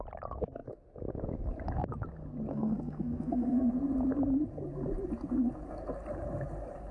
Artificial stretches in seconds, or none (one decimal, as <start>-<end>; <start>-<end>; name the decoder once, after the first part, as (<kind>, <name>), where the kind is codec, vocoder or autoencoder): 2.5-3.7 (codec, SNAC)